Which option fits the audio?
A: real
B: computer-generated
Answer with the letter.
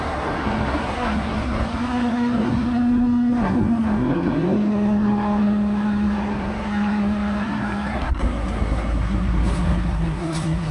B